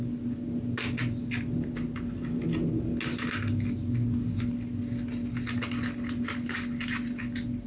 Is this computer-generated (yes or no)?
no